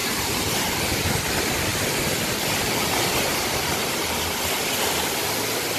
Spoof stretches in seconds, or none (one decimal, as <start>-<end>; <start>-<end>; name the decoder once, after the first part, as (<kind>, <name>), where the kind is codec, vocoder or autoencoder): 0.0-1.2 (vocoder, BigVGAN v2)